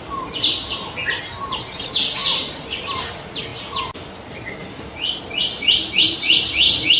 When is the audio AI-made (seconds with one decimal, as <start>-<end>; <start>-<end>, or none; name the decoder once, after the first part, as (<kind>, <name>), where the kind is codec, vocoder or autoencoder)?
none